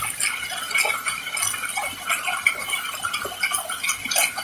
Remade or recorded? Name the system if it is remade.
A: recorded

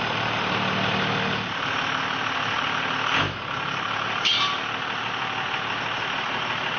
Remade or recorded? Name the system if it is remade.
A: recorded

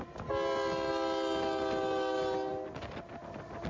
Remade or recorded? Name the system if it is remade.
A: recorded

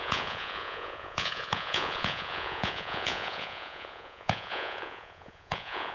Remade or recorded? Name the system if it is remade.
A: remade, vocoder, Vocos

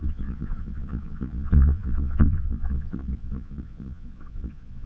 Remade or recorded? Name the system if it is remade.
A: remade, vocoder, Vocos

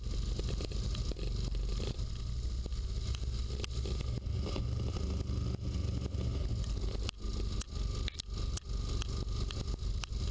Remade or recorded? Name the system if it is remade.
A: recorded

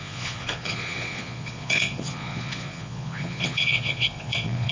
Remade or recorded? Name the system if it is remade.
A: remade, vocoder, Vocos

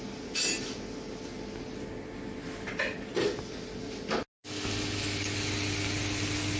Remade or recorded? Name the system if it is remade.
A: recorded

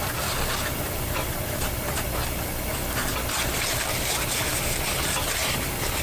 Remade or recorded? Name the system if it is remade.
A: recorded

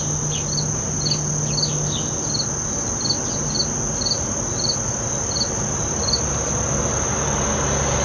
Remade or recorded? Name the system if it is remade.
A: recorded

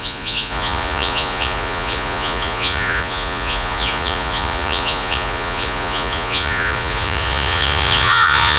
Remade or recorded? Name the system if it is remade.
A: remade, vocoder, Vocos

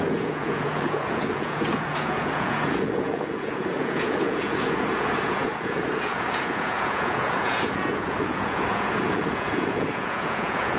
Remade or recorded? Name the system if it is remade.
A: remade, vocoder, Vocos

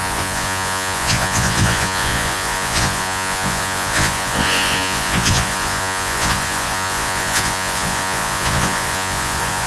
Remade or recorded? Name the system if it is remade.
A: remade, vocoder, Vocos